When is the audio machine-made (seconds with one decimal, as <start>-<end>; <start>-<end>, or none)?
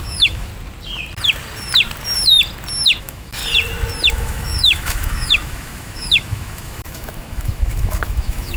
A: 0.0-0.5; 3.0-3.4; 4.1-8.6